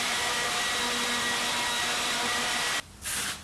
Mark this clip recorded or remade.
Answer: recorded